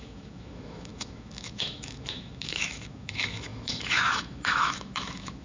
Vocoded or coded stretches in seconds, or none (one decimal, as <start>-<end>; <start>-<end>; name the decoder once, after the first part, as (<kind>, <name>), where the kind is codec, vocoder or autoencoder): 0.0-5.4 (autoencoder, DAC-VAE)